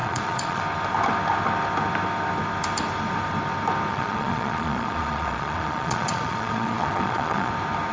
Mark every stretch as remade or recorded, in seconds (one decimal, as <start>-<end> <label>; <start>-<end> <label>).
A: 0.0-0.6 remade; 0.6-3.9 recorded; 3.9-7.5 remade; 7.5-7.9 recorded